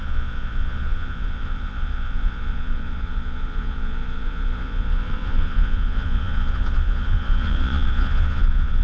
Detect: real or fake fake